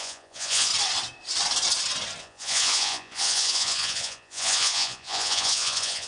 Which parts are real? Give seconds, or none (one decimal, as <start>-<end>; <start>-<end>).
0.7-2.2